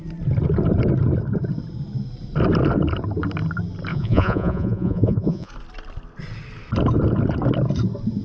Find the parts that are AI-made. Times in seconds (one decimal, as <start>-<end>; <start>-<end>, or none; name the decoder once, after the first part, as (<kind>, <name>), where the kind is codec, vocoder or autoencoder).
3.9-5.5 (vocoder, Vocos)